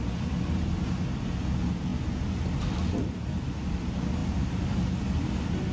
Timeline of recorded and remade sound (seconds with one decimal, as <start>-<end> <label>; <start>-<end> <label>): 0.0-5.7 recorded